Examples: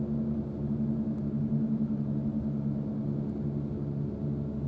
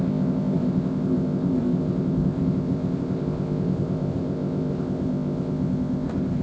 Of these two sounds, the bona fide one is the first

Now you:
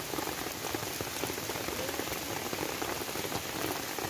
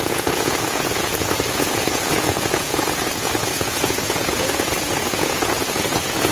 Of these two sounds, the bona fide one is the first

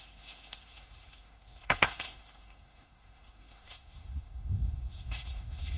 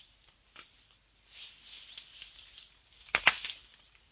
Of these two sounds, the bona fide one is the second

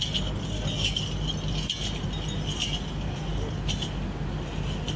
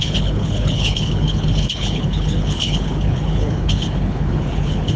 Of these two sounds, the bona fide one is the first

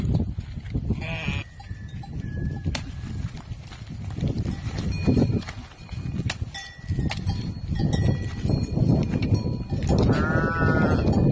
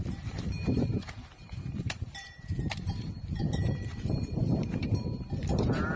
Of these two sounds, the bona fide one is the first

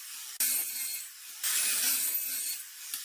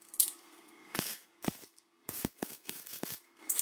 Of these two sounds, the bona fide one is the first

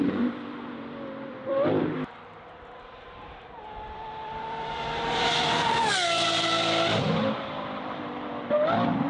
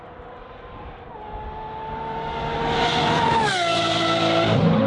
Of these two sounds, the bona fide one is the second